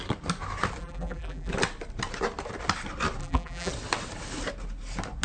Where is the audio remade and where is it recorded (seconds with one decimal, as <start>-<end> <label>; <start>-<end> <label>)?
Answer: 0.0-0.8 recorded; 0.8-1.5 remade; 1.5-3.2 recorded; 3.2-3.7 remade; 3.7-5.2 recorded